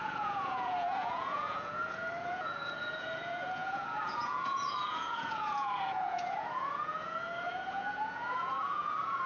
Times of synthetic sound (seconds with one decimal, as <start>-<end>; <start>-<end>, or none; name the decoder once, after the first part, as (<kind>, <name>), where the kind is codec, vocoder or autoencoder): 0.0-9.3 (vocoder, Vocos)